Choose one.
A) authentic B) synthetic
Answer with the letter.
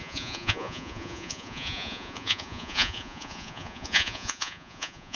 B